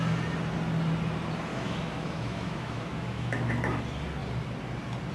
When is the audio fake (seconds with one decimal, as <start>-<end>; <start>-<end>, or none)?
1.5-3.5